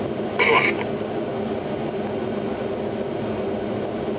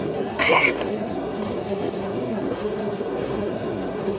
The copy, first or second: second